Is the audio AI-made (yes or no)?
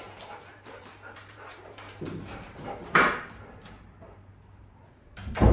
yes